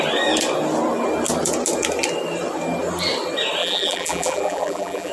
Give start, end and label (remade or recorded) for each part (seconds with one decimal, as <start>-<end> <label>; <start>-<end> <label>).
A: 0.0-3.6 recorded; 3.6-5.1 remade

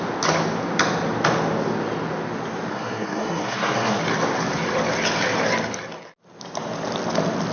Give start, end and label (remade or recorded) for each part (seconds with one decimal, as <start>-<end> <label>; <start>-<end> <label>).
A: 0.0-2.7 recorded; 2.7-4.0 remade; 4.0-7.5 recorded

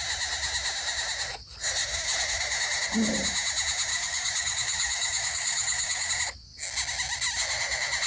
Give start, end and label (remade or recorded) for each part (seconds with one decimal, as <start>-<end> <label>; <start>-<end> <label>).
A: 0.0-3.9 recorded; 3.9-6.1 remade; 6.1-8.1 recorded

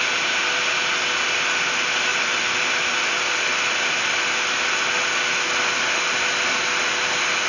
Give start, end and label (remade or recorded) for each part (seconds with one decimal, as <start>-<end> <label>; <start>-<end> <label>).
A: 0.0-7.5 recorded

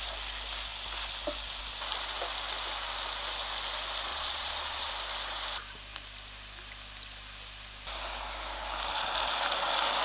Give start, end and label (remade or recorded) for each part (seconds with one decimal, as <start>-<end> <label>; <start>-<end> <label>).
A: 0.0-4.1 recorded; 4.1-4.9 remade; 4.9-10.0 recorded

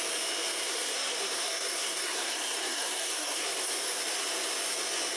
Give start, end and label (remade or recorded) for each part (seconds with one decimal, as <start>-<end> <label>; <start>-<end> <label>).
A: 0.0-0.6 recorded; 0.6-3.7 remade; 3.7-5.2 recorded

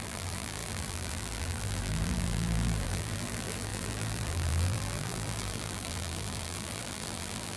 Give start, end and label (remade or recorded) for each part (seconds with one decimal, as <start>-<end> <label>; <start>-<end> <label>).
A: 0.0-7.6 remade